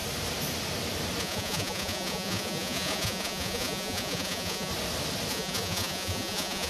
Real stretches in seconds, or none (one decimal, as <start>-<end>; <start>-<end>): 0.0-1.2; 4.7-5.3